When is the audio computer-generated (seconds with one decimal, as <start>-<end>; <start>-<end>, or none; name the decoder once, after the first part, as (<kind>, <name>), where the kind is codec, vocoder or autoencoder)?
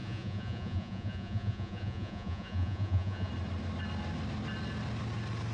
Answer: 0.0-3.3 (vocoder, Vocos)